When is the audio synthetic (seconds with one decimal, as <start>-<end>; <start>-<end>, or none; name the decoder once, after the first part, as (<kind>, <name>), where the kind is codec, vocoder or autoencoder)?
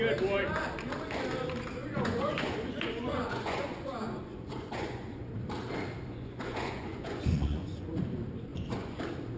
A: 1.8-5.3 (vocoder, Vocos); 6.1-8.0; 8.5-9.0